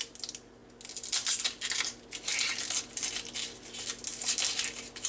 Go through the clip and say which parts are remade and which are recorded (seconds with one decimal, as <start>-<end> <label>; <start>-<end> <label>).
0.0-5.1 recorded